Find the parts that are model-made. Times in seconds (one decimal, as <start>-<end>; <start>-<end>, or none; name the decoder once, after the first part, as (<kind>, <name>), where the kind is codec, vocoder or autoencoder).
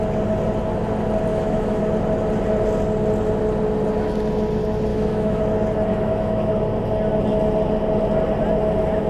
1.3-1.8 (autoencoder, DAC-VAE); 4.9-5.4; 5.9-6.5